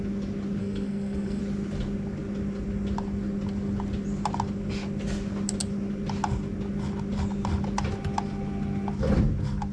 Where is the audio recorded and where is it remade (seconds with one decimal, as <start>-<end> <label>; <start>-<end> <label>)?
0.0-0.6 recorded; 0.6-1.4 remade; 1.4-9.7 recorded